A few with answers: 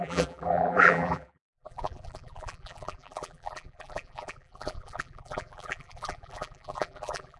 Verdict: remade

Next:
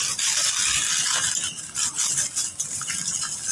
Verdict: recorded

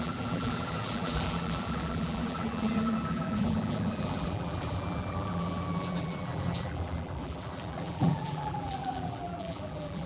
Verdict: remade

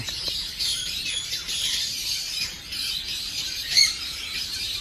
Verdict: remade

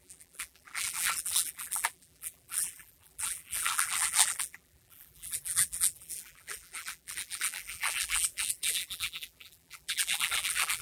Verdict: remade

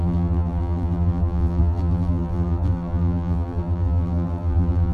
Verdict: remade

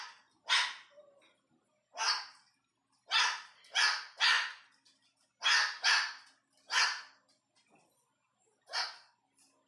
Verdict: recorded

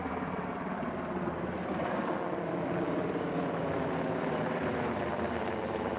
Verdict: remade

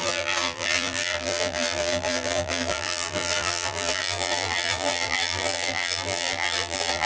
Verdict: remade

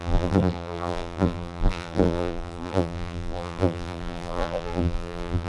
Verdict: remade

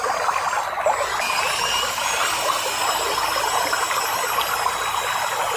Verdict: recorded